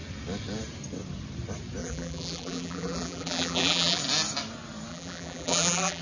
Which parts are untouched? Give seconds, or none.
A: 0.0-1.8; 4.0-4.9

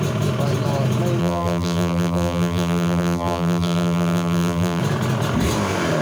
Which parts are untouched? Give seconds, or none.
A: 0.0-1.2; 4.8-6.0

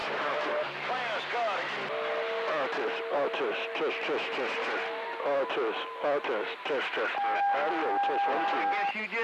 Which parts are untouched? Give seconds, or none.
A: 0.7-9.2